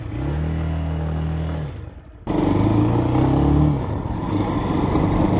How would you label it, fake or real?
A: real